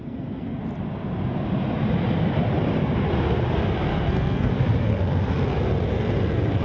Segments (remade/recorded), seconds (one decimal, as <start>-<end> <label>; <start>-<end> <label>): 0.0-0.6 remade; 0.6-3.9 recorded; 3.9-4.5 remade; 4.5-6.6 recorded